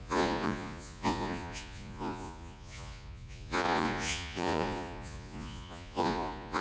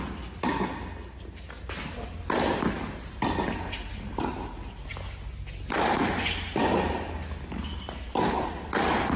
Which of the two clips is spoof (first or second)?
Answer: first